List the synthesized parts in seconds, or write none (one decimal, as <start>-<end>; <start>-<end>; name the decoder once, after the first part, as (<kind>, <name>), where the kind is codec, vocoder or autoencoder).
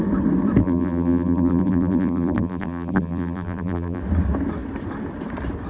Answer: 0.6-4.0 (vocoder, BigVGAN v2)